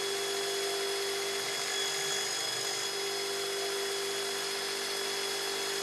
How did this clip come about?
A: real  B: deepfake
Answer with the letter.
A